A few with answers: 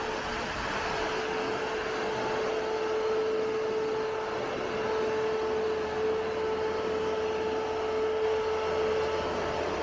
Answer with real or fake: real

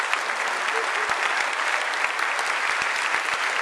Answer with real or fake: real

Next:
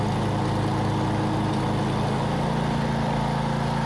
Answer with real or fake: real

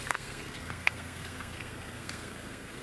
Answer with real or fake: fake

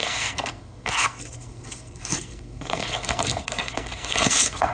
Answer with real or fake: fake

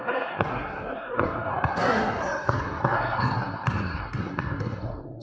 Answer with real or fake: fake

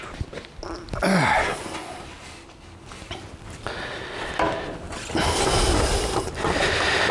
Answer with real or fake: real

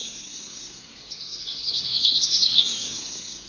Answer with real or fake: fake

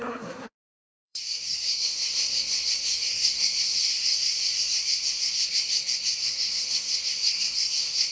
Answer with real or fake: fake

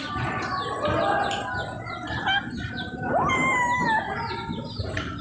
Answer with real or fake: real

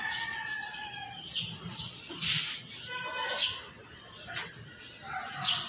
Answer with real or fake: real